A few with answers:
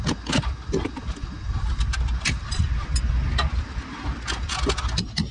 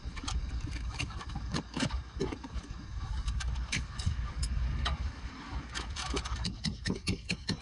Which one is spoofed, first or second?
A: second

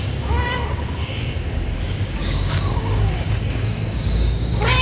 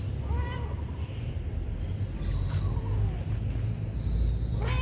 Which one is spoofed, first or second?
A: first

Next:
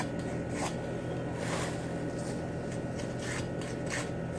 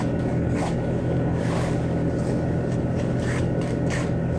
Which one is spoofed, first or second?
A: second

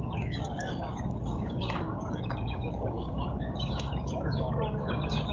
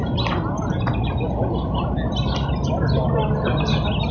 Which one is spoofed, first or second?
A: first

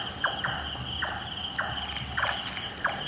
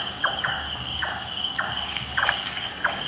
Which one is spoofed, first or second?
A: second